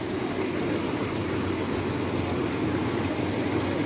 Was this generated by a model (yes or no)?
no